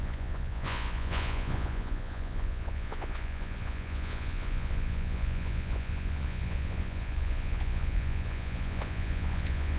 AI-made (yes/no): yes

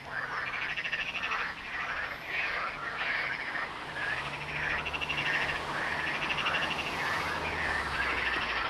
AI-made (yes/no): no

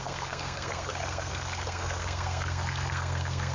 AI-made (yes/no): yes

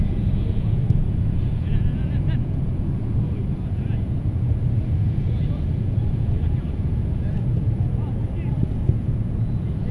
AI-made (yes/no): yes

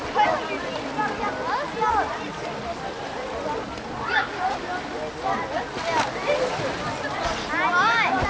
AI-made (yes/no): no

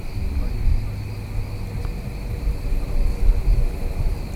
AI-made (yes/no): no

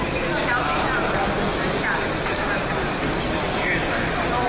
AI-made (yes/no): no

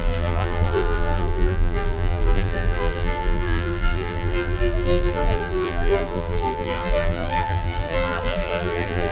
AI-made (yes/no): yes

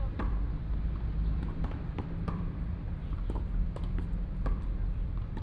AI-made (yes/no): yes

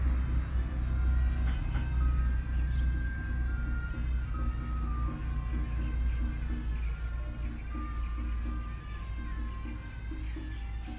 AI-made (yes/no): no